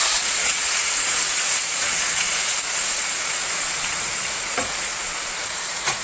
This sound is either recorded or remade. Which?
remade